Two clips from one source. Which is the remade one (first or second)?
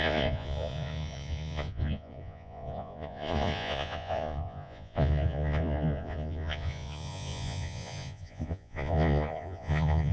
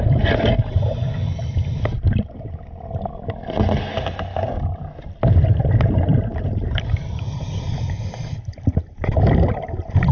first